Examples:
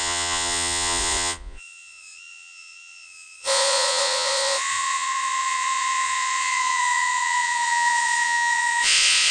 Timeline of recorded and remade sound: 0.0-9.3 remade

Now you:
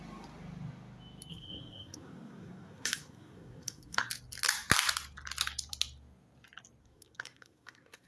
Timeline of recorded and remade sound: 0.0-1.3 recorded; 1.3-4.1 remade; 4.1-6.8 recorded; 6.8-8.1 remade

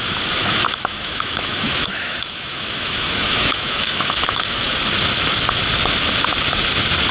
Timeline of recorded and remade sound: 0.0-0.4 recorded; 0.4-4.7 remade; 4.7-7.1 recorded

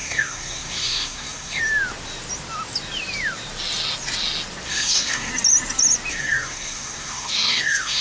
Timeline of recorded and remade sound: 0.0-1.6 remade; 1.6-4.7 recorded; 4.7-5.3 remade; 5.3-6.1 recorded; 6.1-8.0 remade

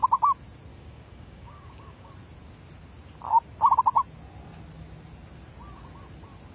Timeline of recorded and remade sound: 0.0-0.7 recorded; 0.7-2.1 remade; 2.1-6.5 recorded

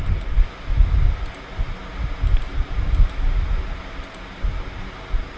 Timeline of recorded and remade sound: 0.0-5.4 recorded

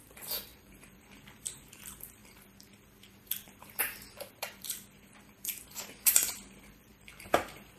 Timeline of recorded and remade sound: 0.0-7.8 remade

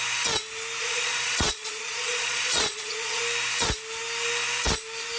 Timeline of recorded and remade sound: 0.0-0.8 recorded; 0.8-3.2 remade; 3.2-5.2 recorded